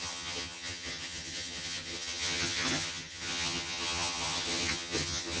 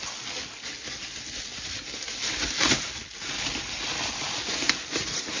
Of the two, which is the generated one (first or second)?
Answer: first